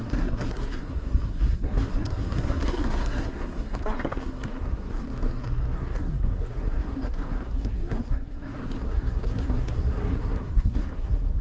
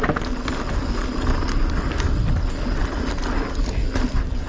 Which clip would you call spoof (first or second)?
first